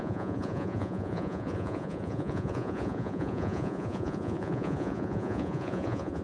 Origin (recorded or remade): remade